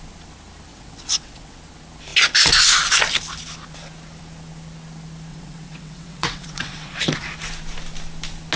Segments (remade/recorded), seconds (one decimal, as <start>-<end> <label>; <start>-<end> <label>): 0.0-0.7 recorded; 0.7-1.6 remade; 1.6-5.3 recorded; 5.3-7.0 remade; 7.0-8.6 recorded